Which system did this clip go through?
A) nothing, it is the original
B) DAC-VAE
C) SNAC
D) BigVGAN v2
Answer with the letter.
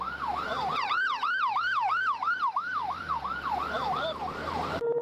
D